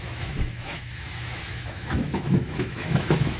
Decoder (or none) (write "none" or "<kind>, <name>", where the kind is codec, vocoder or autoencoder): autoencoder, DAC-VAE